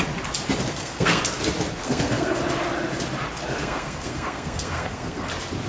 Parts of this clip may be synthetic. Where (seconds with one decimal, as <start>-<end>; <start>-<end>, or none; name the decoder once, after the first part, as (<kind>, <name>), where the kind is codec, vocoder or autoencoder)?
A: 0.7-1.2 (codec, SNAC); 1.8-2.4; 3.6-5.3